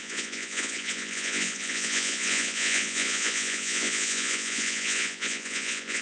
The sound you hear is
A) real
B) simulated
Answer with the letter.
B